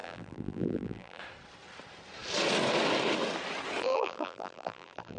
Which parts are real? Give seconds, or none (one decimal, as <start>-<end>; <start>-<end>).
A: 1.2-3.8